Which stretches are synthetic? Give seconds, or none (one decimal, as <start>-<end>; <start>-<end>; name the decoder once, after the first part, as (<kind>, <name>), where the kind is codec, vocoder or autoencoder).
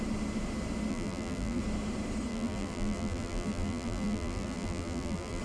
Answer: 0.9-1.6 (vocoder, BigVGAN v2); 2.3-5.4